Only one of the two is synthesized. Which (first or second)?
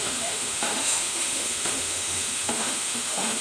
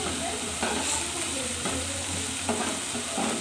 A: first